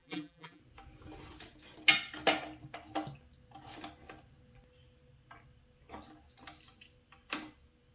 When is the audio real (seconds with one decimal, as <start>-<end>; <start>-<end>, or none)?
0.6-7.9

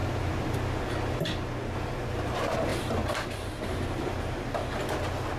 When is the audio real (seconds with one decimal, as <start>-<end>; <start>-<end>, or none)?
0.9-2.7; 4.6-5.4

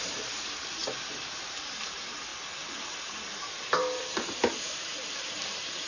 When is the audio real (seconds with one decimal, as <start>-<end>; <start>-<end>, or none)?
0.8-1.6; 2.3-3.0

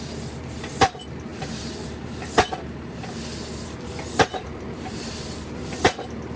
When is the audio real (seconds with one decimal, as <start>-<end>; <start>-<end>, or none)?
0.0-1.3; 3.1-4.3; 5.1-6.4

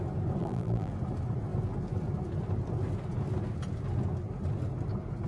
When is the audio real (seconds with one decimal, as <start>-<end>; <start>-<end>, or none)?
0.0-0.4; 0.9-5.3

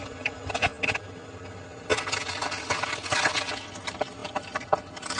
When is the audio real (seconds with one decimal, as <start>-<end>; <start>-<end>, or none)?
0.7-3.8

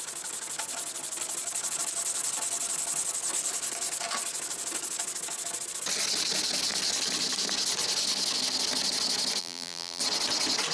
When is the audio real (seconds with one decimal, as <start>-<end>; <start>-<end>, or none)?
0.0-9.4; 10.0-10.7